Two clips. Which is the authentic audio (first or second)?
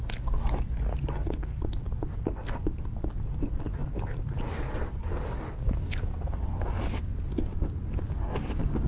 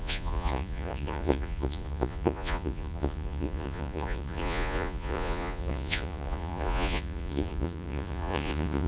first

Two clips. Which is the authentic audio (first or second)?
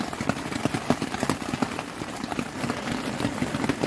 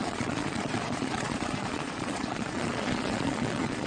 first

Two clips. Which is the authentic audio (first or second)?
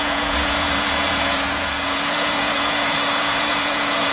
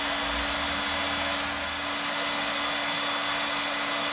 second